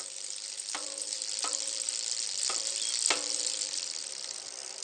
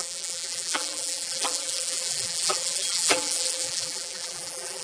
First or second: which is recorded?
first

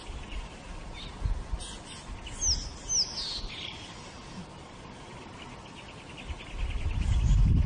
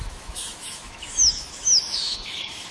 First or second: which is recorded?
first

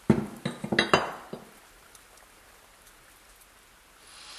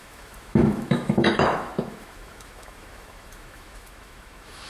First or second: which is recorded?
first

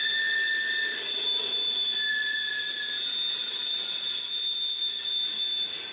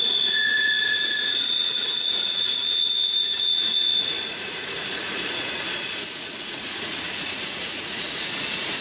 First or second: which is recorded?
first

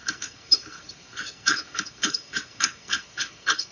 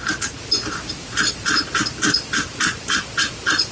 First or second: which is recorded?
second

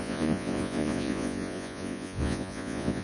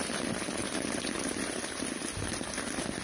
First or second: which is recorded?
second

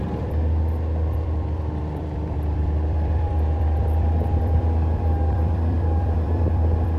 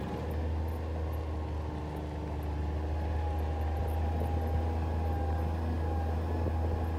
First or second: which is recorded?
second